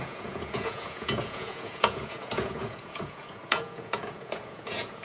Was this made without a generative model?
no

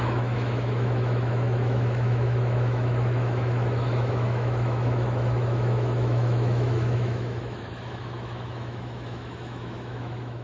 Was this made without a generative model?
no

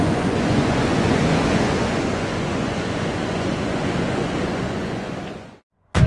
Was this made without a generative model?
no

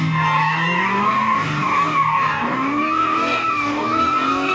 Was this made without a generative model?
no